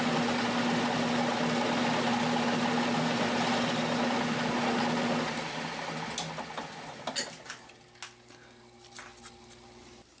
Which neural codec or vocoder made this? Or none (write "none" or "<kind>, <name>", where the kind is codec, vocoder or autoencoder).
none